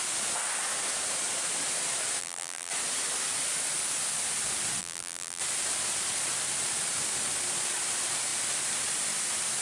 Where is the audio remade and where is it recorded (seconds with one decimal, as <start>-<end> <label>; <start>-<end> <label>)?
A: 0.0-2.2 recorded; 2.2-2.7 remade; 2.7-4.8 recorded; 4.8-5.4 remade; 5.4-9.6 recorded